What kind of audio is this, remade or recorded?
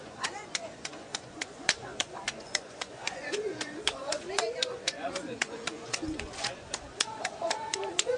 remade